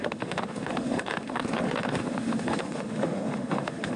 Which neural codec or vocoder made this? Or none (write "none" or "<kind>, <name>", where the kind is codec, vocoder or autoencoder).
autoencoder, DAC-VAE